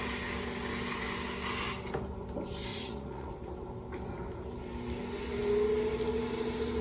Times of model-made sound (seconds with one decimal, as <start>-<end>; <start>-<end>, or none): 2.7-3.3